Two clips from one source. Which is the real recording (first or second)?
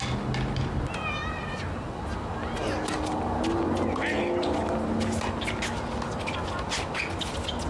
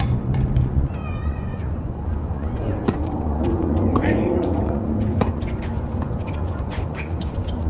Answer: first